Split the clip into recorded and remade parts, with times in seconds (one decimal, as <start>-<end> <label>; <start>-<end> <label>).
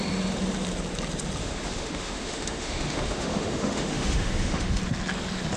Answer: 0.0-1.4 recorded; 1.4-4.8 remade; 4.8-5.6 recorded